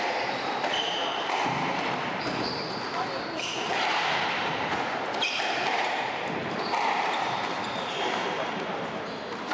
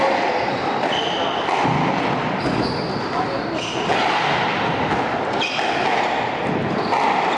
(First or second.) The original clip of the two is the second